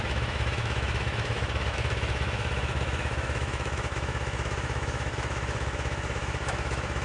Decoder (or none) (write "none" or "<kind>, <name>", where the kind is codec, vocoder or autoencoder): autoencoder, DAC-VAE